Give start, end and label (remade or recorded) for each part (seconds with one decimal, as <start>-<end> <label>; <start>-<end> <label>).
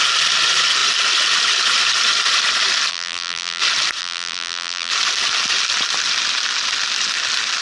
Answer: 0.0-2.9 recorded; 2.9-3.6 remade; 3.6-4.0 recorded; 4.0-4.9 remade; 4.9-7.6 recorded